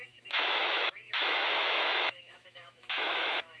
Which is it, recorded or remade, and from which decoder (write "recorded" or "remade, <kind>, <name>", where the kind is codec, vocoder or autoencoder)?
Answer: remade, autoencoder, DAC-VAE